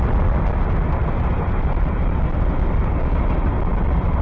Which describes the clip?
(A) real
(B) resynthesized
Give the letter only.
A